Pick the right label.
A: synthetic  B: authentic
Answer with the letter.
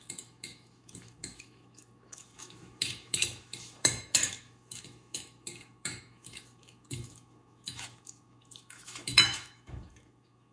A